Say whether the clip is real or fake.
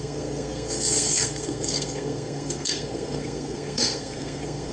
fake